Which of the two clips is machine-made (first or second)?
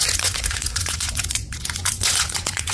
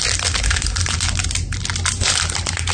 first